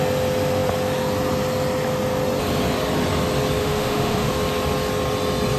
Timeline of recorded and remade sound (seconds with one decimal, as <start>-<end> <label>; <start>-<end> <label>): 0.0-3.6 recorded; 3.6-4.3 remade; 4.3-5.6 recorded